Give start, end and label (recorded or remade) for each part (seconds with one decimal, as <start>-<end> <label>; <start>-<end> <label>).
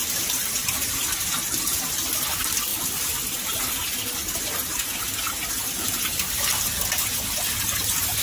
0.0-1.2 remade; 1.2-8.2 recorded